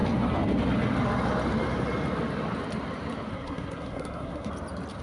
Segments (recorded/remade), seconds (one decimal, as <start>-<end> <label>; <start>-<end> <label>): 0.0-3.3 recorded; 3.3-4.5 remade; 4.5-5.0 recorded